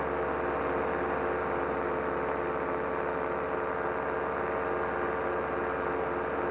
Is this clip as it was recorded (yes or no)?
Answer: yes